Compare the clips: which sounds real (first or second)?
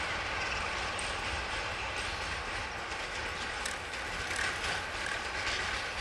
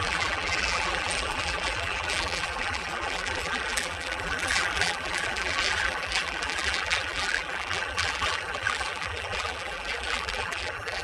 first